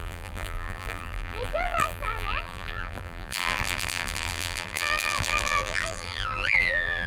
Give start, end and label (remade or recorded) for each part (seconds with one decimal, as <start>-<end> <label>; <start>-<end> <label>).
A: 0.0-7.1 remade